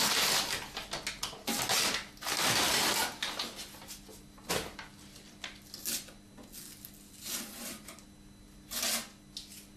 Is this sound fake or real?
real